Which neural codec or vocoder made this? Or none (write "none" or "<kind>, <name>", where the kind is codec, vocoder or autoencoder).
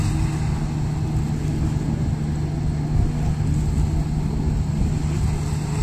none